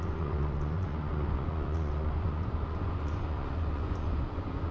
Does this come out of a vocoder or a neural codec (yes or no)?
yes